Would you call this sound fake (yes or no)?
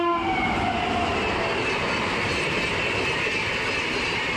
no